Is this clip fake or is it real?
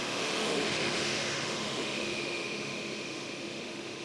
fake